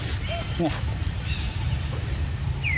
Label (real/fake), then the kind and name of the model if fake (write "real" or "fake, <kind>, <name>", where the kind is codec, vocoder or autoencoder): fake, vocoder, BigVGAN v2